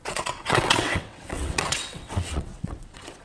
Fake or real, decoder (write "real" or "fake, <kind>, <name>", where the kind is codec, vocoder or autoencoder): fake, vocoder, WaveNeXt